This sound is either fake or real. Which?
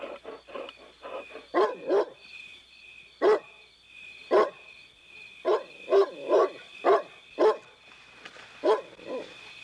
real